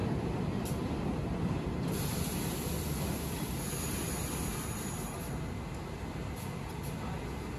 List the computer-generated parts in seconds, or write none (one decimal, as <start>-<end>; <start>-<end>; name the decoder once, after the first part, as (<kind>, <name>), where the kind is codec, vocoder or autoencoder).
none